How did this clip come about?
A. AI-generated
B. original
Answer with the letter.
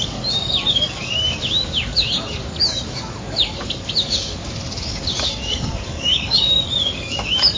A